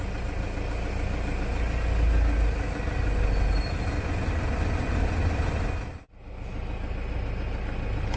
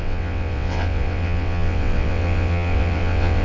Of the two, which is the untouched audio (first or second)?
first